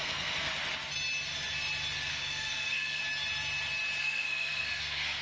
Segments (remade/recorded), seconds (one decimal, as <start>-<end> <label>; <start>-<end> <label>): 0.0-0.5 remade; 0.5-2.1 recorded; 2.1-3.0 remade; 3.0-4.0 recorded; 4.0-5.2 remade

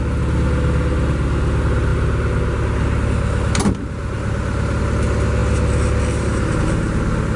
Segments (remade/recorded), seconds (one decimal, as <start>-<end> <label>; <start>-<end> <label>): 0.0-7.4 recorded